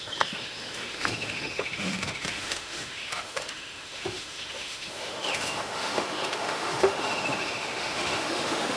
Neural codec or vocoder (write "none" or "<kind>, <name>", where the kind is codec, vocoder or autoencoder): autoencoder, DAC-VAE